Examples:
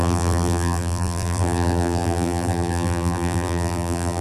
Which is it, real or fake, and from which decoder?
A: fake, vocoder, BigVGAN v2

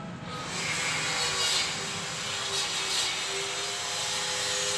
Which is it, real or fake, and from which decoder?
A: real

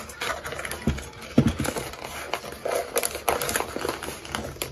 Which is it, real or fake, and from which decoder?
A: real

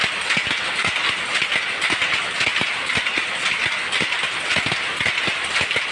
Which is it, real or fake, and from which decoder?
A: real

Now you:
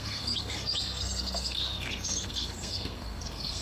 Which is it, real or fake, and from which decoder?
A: fake, codec, SNAC